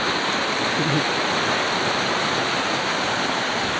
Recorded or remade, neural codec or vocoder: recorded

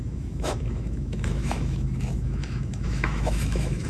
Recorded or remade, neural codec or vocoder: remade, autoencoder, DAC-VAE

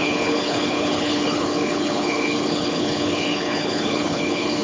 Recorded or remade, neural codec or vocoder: remade, codec, HILCodec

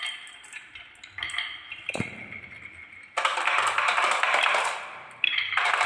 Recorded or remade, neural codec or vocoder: remade, vocoder, BigVGAN v2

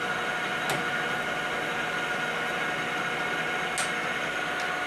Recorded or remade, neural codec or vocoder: recorded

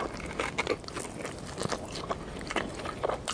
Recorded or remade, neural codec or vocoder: recorded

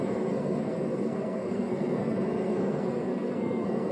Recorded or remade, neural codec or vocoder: remade, codec, SNAC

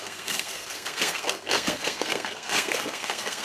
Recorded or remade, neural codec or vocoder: remade, codec, SNAC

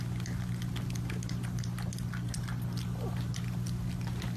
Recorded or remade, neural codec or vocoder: recorded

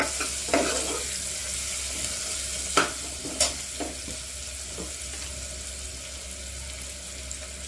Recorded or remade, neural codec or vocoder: recorded